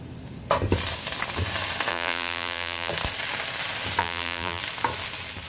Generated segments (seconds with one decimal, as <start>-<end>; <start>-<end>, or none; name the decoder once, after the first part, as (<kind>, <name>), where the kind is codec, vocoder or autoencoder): 1.9-2.9 (vocoder, BigVGAN v2); 4.0-4.6